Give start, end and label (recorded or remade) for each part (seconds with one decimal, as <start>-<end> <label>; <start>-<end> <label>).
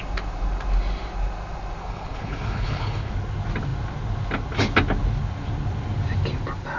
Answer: 0.0-1.8 recorded; 1.8-3.1 remade; 3.1-6.8 recorded